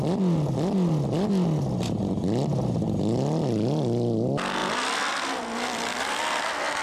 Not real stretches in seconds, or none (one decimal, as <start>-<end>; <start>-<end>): 4.6-5.4